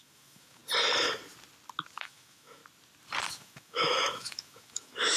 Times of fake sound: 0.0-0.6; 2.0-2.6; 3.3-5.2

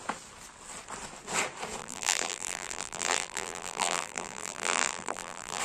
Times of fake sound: 1.8-5.6

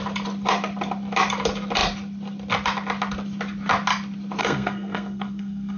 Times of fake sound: 4.4-5.8

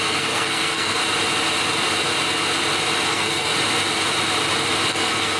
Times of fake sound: 0.0-1.0; 3.1-3.5; 4.9-5.4